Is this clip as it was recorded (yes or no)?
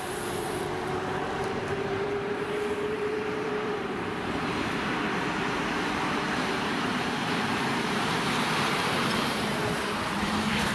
no